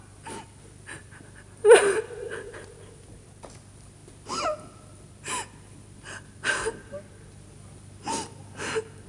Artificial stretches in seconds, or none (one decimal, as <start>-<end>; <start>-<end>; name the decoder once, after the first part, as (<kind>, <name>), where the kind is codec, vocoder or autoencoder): none